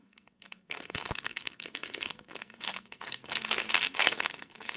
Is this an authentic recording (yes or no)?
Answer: no